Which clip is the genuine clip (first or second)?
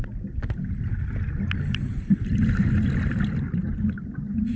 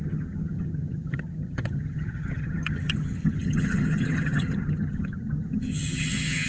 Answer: first